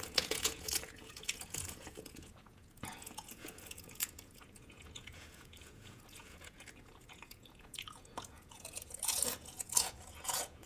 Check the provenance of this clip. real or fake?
fake